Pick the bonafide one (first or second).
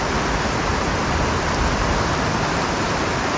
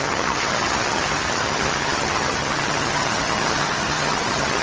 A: first